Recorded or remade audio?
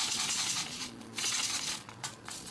remade